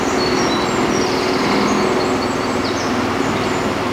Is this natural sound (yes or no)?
yes